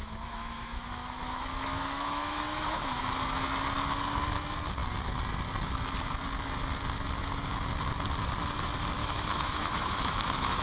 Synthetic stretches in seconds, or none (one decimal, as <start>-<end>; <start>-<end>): 0.0-3.0; 9.0-10.6